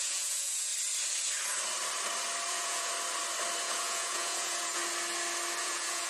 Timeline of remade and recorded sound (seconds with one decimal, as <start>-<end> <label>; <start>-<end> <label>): 0.0-0.7 remade; 0.7-2.5 recorded; 2.5-2.9 remade; 2.9-3.6 recorded; 3.6-4.8 remade; 4.8-5.6 recorded; 5.6-6.1 remade